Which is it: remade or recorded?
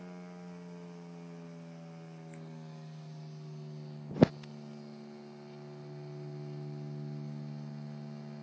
recorded